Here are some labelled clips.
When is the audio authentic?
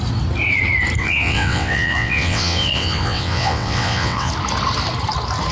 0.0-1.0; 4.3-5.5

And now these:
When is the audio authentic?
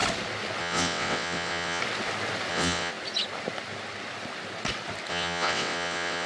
0.0-0.6; 1.8-2.5; 2.9-5.1